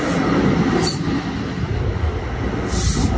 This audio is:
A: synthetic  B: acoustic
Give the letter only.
B